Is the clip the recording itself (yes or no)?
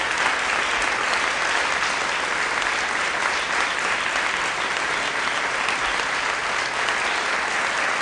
yes